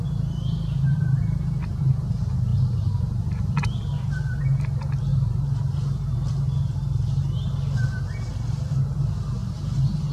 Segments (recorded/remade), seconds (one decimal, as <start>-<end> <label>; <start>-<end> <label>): 0.0-2.5 recorded; 2.5-4.4 remade; 4.4-10.1 recorded